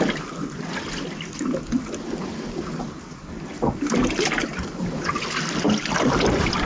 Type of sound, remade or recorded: recorded